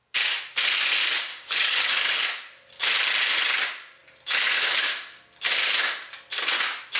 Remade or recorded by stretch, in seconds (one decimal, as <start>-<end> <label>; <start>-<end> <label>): 0.0-1.3 recorded; 1.3-2.3 remade; 2.3-7.0 recorded